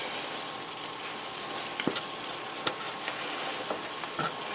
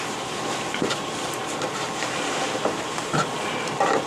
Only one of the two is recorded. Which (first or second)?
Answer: first